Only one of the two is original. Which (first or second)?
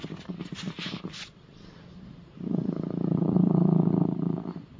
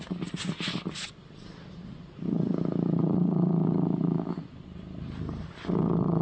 second